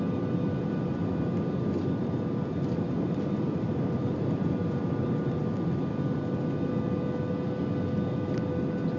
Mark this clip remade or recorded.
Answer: recorded